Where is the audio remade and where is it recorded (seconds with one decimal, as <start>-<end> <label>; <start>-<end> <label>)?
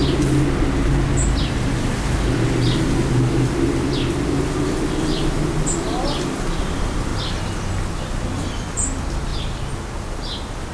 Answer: 0.0-10.7 recorded